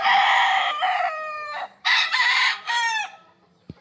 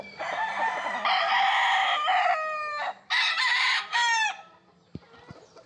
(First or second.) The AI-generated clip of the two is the first